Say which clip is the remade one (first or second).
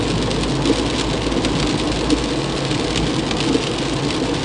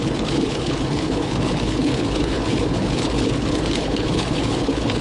second